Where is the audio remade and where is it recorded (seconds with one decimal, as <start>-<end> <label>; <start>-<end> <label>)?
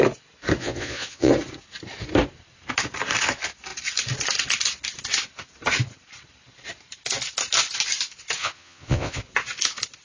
0.0-0.6 recorded; 0.6-1.3 remade; 1.3-8.4 recorded; 8.4-9.2 remade; 9.2-10.0 recorded